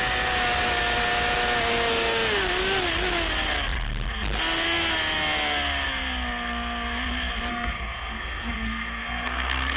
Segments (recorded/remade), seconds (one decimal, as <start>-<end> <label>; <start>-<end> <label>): 0.0-7.5 recorded; 7.5-9.8 remade